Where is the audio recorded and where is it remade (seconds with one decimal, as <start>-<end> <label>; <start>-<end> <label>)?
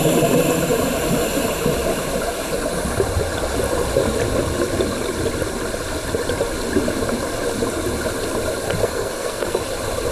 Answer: 0.0-8.8 recorded; 8.8-9.6 remade; 9.6-10.1 recorded